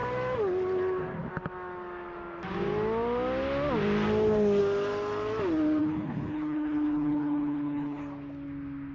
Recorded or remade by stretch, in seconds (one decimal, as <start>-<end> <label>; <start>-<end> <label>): 0.0-5.8 recorded; 5.8-8.0 remade; 8.0-8.9 recorded